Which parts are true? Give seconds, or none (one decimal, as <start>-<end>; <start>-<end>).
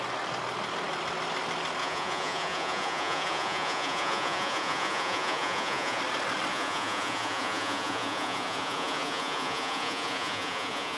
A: 0.0-1.8; 6.0-6.5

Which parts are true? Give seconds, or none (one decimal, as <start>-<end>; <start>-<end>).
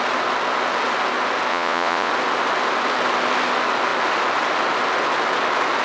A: 0.0-1.5; 2.1-5.8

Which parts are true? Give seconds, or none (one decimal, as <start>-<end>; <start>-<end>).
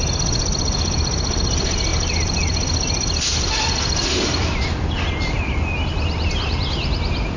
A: 0.0-7.4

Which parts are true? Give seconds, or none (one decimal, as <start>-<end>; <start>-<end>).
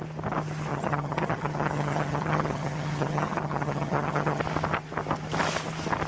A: 0.0-0.7; 4.4-6.1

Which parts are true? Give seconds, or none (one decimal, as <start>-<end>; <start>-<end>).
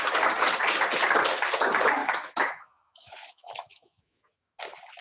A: 0.0-2.0; 4.6-5.0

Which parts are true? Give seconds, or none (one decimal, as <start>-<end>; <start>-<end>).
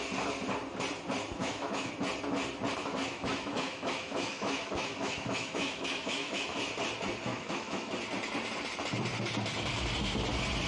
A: 0.0-1.4; 1.9-2.8; 6.6-7.3; 7.9-10.7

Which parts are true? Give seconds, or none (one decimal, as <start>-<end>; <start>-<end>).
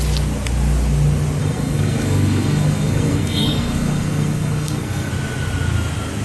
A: 0.0-1.4; 5.1-6.2